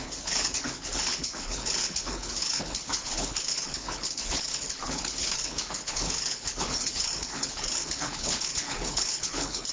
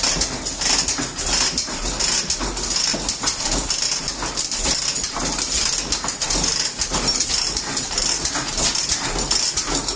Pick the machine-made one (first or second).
first